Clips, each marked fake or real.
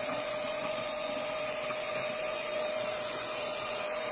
fake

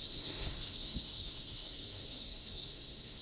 fake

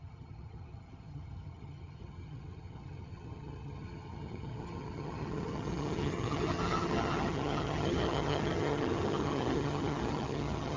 fake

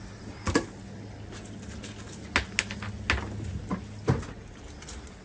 real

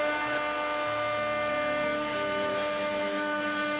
real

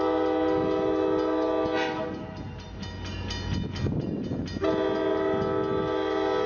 real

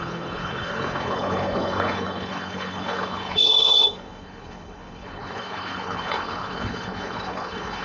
fake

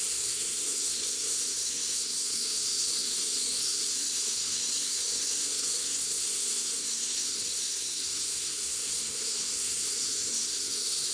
fake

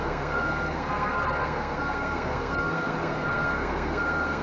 fake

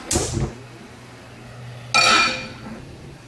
real